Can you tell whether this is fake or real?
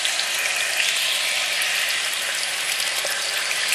real